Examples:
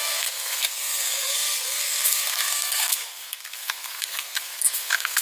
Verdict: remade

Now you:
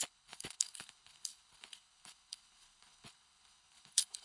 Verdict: remade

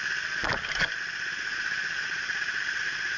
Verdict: remade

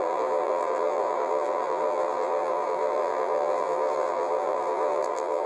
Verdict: remade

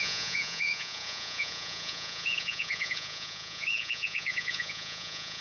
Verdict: remade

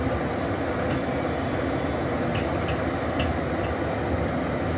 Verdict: recorded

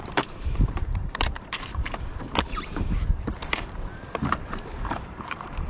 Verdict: remade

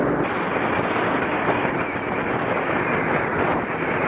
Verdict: recorded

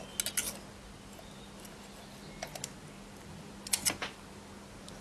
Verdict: recorded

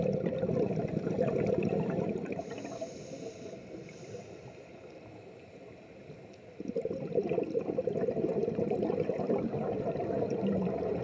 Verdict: recorded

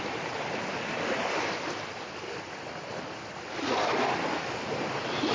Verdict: recorded